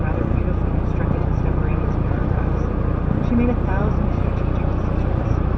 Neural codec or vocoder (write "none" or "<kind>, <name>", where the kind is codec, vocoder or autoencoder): none